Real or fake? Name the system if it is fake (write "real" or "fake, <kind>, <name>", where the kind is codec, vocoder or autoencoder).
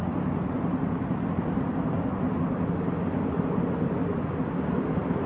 real